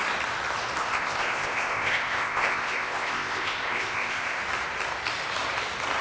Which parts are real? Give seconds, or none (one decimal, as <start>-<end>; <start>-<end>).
0.0-0.8; 4.4-6.0

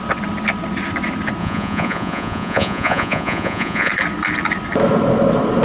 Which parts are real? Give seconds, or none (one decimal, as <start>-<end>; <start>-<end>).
0.0-1.4; 3.9-5.6

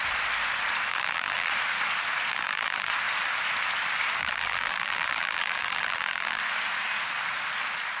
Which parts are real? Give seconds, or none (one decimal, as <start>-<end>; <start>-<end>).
0.0-0.9; 1.5-2.3; 2.9-4.2; 6.4-8.0

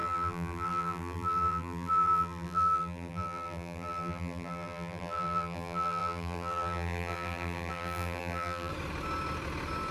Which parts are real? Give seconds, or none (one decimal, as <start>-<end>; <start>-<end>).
8.7-9.9

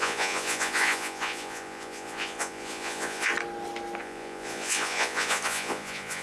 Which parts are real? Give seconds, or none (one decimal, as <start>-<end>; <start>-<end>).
3.3-4.0

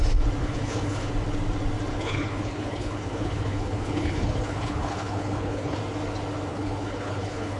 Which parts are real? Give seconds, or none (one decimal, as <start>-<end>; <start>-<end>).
0.0-0.4; 1.1-1.9; 5.8-6.5